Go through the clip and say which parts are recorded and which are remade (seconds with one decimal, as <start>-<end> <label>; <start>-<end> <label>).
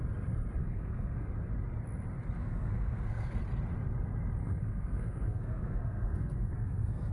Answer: 0.0-0.6 recorded; 0.6-1.3 remade; 1.3-2.4 recorded; 2.4-3.4 remade; 3.4-4.4 recorded; 4.4-7.1 remade